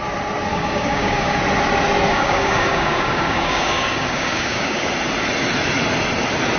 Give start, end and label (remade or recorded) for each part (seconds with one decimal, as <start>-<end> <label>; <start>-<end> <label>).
0.0-0.5 recorded; 0.5-1.4 remade; 1.4-2.1 recorded; 2.1-4.9 remade; 4.9-6.6 recorded